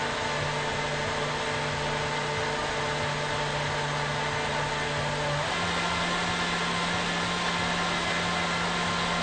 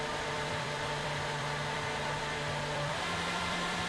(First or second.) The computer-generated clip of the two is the second